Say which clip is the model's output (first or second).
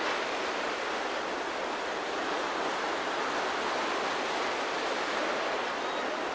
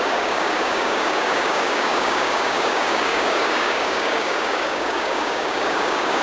second